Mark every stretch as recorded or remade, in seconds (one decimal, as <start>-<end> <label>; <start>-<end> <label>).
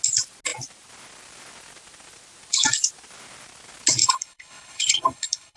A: 0.0-4.0 recorded; 4.0-5.6 remade